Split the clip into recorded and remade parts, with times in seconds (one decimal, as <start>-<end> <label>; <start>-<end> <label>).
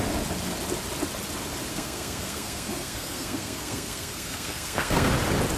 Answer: 0.0-1.7 recorded; 1.7-5.1 remade; 5.1-5.6 recorded